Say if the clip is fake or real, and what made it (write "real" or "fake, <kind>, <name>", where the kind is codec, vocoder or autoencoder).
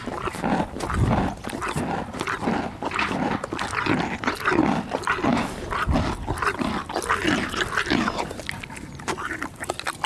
real